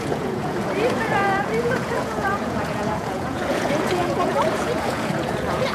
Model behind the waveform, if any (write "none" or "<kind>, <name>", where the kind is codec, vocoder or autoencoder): vocoder, Vocos